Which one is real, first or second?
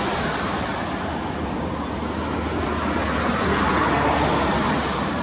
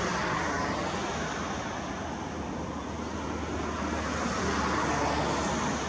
second